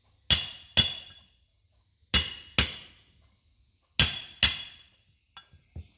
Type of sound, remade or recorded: recorded